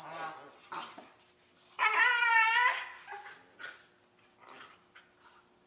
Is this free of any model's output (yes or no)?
yes